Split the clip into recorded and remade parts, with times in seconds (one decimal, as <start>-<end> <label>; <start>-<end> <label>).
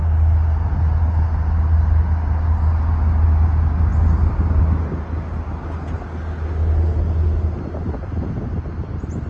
0.0-9.3 recorded